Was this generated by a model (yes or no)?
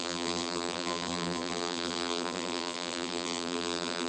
yes